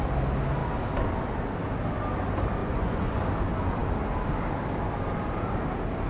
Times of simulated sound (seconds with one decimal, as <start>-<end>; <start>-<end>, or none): 2.6-3.2